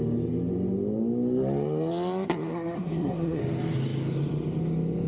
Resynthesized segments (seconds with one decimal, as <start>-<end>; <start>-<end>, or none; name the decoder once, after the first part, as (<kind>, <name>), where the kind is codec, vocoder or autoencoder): 2.5-3.4 (codec, SNAC)